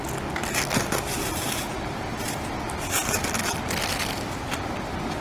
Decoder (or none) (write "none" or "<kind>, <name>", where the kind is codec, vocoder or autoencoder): none